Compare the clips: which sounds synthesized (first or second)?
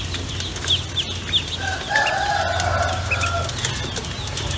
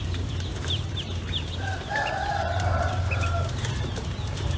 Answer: second